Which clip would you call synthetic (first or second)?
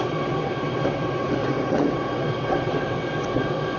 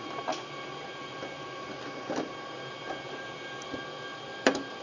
first